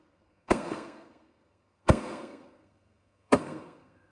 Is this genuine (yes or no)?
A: no